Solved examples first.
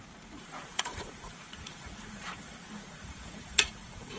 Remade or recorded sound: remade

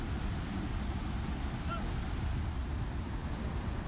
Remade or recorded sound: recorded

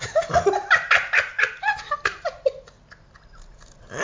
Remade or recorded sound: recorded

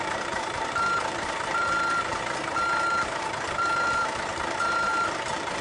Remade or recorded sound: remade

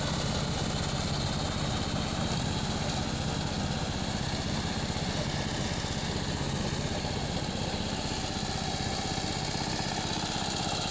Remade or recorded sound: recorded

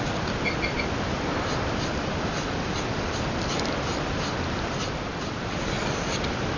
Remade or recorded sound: recorded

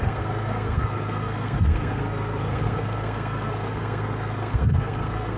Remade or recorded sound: remade